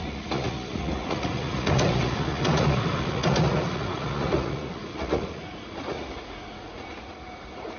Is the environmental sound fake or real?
fake